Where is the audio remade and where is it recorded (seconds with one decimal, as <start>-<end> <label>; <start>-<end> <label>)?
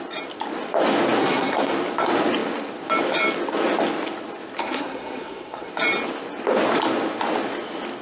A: 0.0-1.2 recorded; 1.2-1.7 remade; 1.7-4.6 recorded; 4.6-5.7 remade; 5.7-8.0 recorded